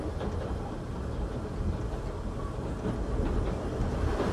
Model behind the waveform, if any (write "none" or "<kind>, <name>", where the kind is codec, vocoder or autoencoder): none